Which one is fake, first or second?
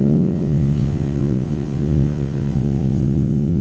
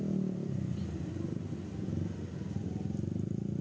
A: first